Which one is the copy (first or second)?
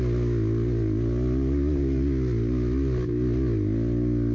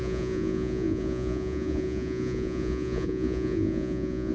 second